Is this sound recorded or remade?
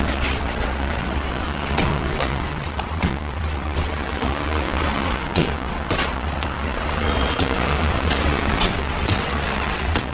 remade